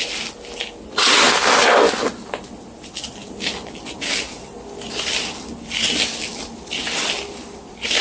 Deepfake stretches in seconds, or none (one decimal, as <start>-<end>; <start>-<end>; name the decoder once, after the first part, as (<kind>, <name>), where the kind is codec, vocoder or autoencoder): none